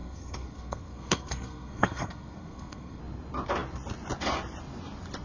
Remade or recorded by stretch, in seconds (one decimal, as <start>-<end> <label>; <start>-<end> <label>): 0.0-3.0 remade; 3.0-5.2 recorded